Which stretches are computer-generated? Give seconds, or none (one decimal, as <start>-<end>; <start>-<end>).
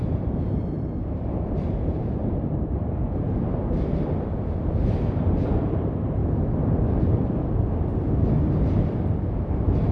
0.0-6.2; 9.5-9.9